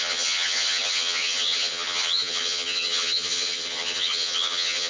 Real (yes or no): no